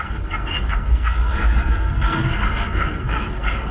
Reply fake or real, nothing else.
fake